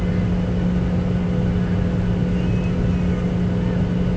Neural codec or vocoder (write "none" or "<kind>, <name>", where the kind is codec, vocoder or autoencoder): none